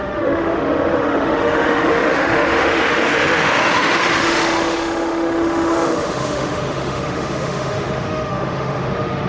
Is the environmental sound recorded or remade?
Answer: remade